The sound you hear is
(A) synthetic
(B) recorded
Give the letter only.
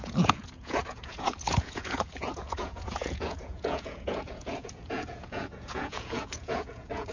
A